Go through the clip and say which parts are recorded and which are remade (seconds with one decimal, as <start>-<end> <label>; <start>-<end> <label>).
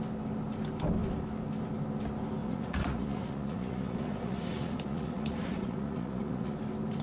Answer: 0.0-2.4 recorded; 2.4-6.6 remade; 6.6-7.0 recorded